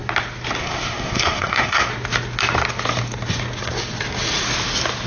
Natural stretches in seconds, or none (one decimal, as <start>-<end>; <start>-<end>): 0.0-0.6; 1.9-5.1